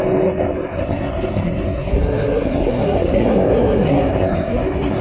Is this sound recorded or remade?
remade